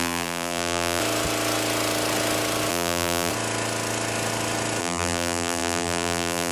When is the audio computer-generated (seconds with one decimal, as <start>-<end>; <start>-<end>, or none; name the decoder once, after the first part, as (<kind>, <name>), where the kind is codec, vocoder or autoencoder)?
0.0-1.0 (vocoder, BigVGAN v2); 2.7-3.3; 4.8-6.5